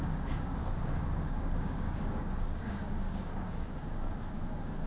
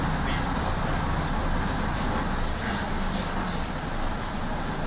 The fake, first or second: first